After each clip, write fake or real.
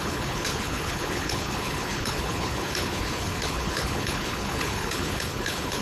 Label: fake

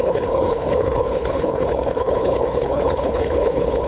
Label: fake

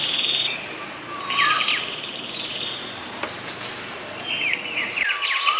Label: fake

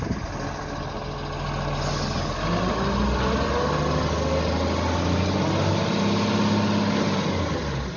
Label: real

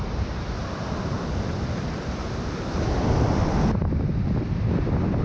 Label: real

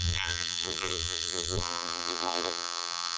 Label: fake